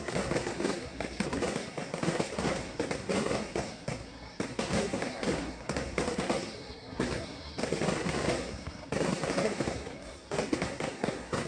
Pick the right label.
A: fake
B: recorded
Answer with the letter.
A